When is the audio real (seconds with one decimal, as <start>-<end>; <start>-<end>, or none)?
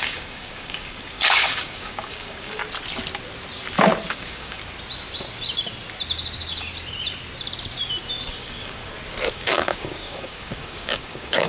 2.6-4.1; 4.6-8.3; 8.8-9.3